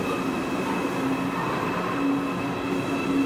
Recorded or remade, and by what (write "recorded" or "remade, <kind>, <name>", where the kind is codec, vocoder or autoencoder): recorded